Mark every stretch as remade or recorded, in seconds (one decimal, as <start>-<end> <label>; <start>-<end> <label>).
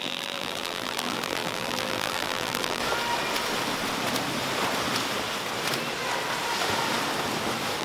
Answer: 0.0-2.8 remade; 2.8-7.8 recorded